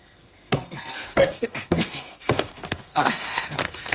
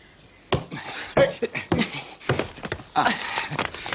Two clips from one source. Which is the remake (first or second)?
first